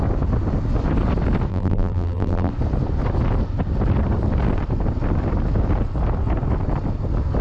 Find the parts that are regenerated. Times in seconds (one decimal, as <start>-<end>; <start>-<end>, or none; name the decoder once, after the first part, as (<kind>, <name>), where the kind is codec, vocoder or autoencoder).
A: 1.5-2.5 (vocoder, BigVGAN v2)